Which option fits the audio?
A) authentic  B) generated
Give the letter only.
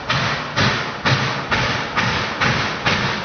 A